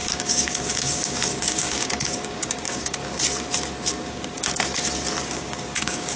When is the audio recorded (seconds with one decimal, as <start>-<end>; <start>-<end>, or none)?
3.0-4.1; 4.5-5.2